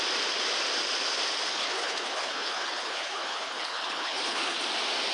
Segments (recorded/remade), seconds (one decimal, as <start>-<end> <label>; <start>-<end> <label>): 0.0-1.5 recorded; 1.5-4.6 remade; 4.6-5.1 recorded